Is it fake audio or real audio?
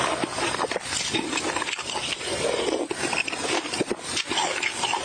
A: real